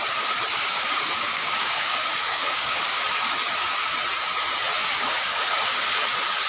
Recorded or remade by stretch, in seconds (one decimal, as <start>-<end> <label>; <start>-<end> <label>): 0.0-0.5 recorded; 0.5-3.0 remade; 3.0-4.8 recorded; 4.8-5.5 remade; 5.5-6.5 recorded